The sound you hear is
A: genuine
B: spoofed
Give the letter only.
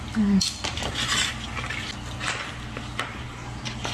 A